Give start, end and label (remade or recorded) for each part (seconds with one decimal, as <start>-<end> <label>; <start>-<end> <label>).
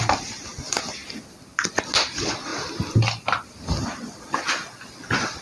0.0-1.0 recorded; 1.0-1.8 remade; 1.8-2.5 recorded; 2.5-5.4 remade